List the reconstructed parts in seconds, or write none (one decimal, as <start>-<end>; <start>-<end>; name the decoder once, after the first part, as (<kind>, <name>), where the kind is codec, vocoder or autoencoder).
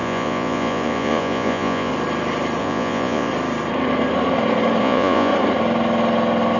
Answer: 0.0-1.9 (vocoder, Vocos); 2.6-3.3; 4.8-5.3